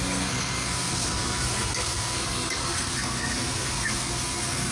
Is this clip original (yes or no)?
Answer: no